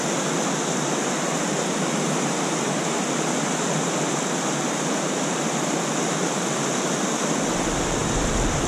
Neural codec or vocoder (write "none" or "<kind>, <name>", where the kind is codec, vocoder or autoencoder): none